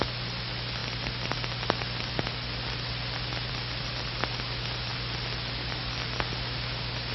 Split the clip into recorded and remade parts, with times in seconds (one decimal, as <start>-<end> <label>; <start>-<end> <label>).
0.0-7.1 recorded